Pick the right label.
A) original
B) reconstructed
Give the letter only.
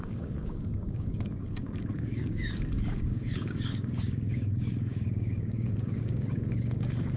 B